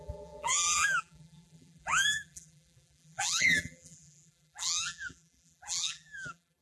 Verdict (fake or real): fake